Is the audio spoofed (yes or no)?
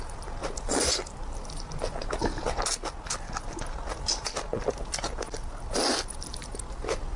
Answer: no